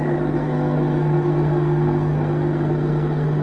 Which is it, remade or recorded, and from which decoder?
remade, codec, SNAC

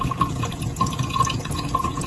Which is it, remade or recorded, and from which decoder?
remade, vocoder, Vocos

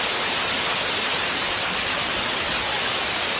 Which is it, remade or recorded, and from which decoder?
recorded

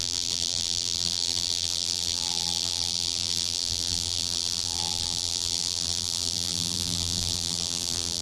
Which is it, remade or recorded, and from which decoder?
remade, vocoder, BigVGAN v2